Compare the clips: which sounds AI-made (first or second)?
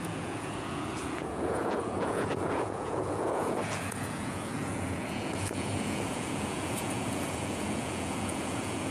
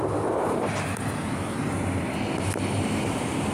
first